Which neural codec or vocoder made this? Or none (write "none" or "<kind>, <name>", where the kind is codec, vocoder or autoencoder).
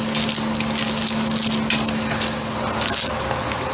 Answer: none